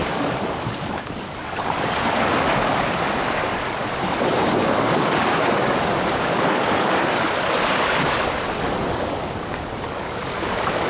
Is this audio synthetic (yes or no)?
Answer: yes